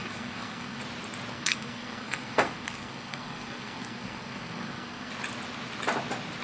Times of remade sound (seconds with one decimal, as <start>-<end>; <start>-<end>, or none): 0.0-0.8; 1.3-5.1

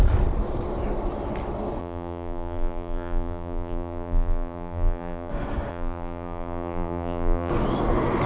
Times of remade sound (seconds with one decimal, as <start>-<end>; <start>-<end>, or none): 1.8-5.3; 5.7-7.5

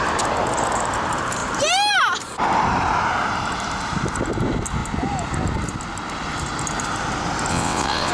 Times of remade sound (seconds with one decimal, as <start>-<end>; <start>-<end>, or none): 7.5-8.1

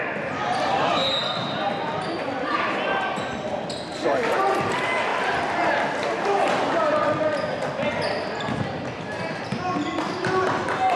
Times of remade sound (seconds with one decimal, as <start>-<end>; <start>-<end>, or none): none